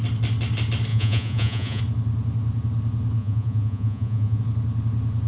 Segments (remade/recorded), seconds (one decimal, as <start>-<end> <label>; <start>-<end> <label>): 0.0-0.9 recorded; 0.9-1.8 remade; 1.8-3.2 recorded; 3.2-4.4 remade; 4.4-5.3 recorded